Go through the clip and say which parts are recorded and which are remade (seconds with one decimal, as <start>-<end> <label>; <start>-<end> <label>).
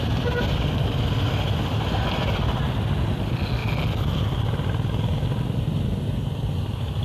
0.0-7.0 recorded